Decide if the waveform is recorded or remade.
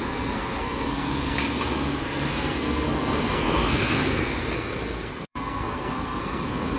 remade